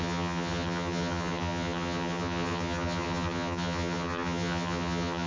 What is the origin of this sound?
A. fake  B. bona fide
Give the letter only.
A